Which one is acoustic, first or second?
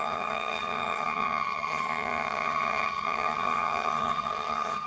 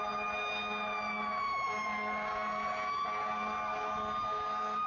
second